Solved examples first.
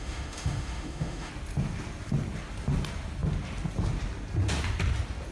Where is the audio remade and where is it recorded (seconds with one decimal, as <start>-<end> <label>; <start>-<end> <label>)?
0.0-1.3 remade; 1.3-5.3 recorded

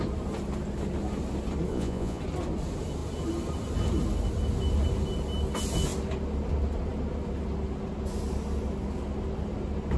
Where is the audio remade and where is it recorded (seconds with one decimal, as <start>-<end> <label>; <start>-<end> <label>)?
0.0-1.7 recorded; 1.7-2.2 remade; 2.2-10.0 recorded

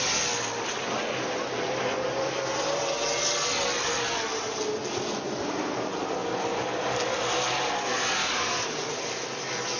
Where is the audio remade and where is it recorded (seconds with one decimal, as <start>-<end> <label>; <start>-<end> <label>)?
0.0-9.8 recorded

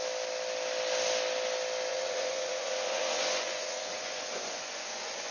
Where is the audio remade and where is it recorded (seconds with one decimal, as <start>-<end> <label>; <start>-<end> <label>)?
0.0-1.9 recorded; 1.9-5.3 remade

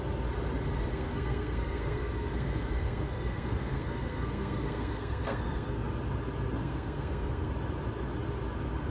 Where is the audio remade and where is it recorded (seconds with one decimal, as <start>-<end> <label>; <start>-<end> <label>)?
0.0-0.9 recorded; 0.9-5.9 remade; 5.9-6.6 recorded; 6.6-7.5 remade; 7.5-8.9 recorded

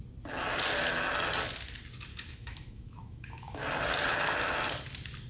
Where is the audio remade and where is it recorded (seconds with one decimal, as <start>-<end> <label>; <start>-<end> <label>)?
0.0-2.1 recorded; 2.1-3.6 remade; 3.6-5.3 recorded